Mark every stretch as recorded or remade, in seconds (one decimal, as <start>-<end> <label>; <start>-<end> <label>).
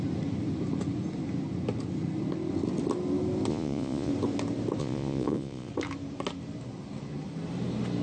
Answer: 0.0-3.5 recorded; 3.5-4.1 remade; 4.1-4.8 recorded; 4.8-5.7 remade; 5.7-8.0 recorded